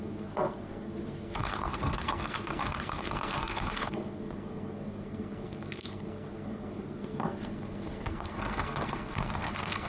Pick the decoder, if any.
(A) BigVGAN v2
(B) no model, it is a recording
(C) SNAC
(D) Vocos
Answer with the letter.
C